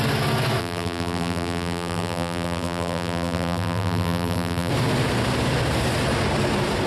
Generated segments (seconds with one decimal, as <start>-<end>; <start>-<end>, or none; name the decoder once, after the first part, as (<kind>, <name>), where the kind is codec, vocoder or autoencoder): 0.6-4.7 (vocoder, BigVGAN v2)